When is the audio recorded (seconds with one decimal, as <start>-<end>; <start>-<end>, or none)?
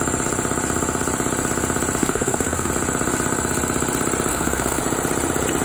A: 0.0-2.0; 2.7-4.3; 4.8-5.6